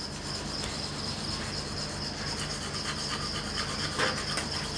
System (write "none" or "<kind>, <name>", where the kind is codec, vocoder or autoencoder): none